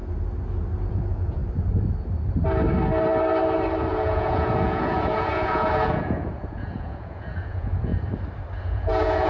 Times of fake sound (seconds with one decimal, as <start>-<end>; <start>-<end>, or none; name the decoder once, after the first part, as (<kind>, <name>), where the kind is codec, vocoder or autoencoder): 0.9-1.4 (vocoder, Vocos); 3.9-7.9; 8.6-9.3